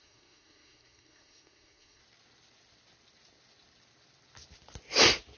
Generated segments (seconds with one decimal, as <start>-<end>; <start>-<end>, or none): 0.0-2.0